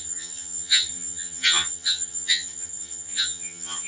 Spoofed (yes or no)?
yes